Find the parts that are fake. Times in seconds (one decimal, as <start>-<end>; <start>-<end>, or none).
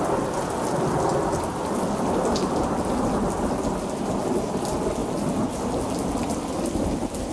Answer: none